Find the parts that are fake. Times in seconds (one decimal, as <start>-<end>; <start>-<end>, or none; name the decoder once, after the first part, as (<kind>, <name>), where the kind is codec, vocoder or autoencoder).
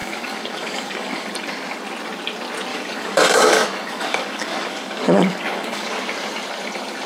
0.0-1.3 (codec, DAC); 2.7-5.9